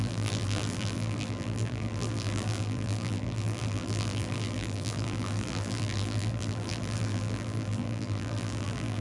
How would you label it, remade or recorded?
remade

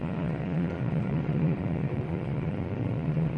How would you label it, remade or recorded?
remade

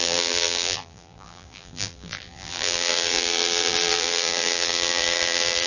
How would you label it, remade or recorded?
remade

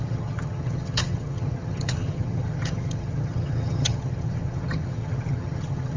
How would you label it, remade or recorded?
remade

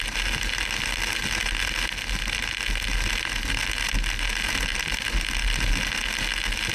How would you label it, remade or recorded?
recorded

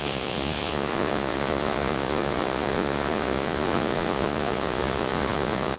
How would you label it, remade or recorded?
remade